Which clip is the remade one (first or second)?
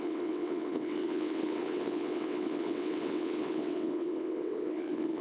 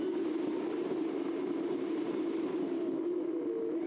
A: first